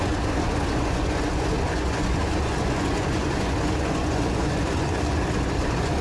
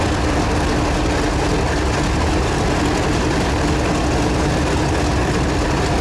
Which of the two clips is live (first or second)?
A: second